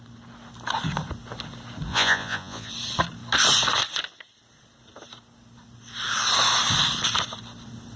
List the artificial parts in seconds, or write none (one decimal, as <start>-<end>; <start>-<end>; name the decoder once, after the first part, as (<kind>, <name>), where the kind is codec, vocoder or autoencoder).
1.9-2.7 (vocoder, Vocos)